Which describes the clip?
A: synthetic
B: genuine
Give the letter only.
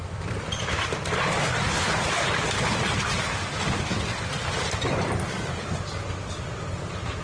B